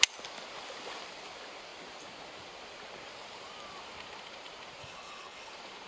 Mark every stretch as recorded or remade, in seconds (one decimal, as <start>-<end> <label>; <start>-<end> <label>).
0.0-4.8 recorded; 4.8-5.5 remade; 5.5-5.9 recorded